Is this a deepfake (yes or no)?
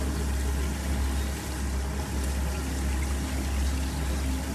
no